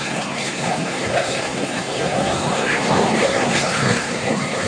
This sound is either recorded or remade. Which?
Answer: remade